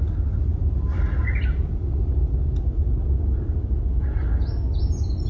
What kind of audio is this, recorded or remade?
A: recorded